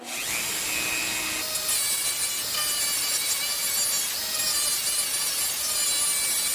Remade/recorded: recorded